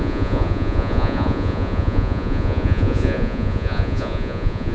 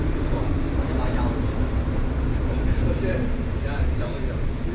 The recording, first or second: second